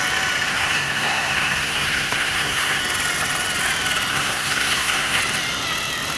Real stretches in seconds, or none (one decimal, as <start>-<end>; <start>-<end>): 0.0-0.5; 2.8-4.1; 5.2-6.2

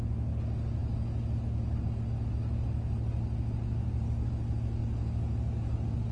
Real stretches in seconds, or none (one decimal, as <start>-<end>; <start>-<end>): 0.0-6.1

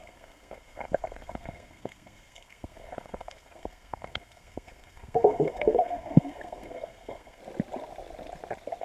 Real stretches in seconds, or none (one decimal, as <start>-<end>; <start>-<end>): 7.4-8.8

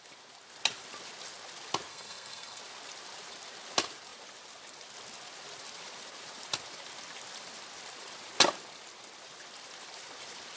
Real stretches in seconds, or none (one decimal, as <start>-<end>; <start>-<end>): 0.0-1.9; 2.6-10.6

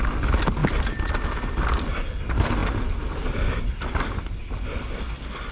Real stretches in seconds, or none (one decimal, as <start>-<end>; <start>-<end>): 0.0-5.5

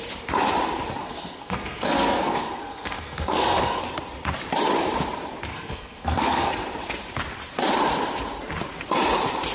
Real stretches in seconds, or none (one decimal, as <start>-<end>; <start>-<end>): 0.0-1.0; 3.8-5.5; 6.5-9.5

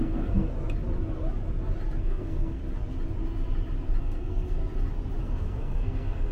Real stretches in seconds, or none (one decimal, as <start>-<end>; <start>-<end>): 0.5-2.0; 2.6-4.0; 4.6-5.2

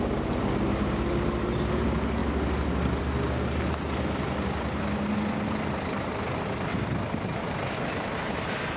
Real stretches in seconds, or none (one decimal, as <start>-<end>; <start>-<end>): 0.0-8.8